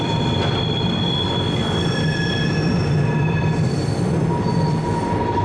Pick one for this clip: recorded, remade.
remade